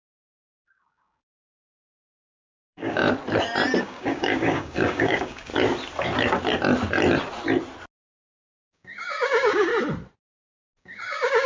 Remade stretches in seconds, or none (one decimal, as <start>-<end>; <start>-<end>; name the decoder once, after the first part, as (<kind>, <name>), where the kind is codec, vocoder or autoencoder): 0.0-3.0 (codec, DAC); 3.8-5.5; 8.5-9.7; 10.8-11.5